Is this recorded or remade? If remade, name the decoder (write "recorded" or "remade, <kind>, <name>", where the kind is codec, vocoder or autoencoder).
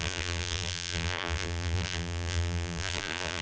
remade, vocoder, BigVGAN v2